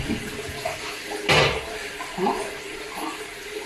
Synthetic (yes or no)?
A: no